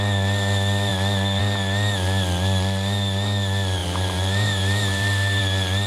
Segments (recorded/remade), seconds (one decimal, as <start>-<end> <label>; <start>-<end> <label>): 0.0-3.8 recorded; 3.8-5.4 remade; 5.4-5.9 recorded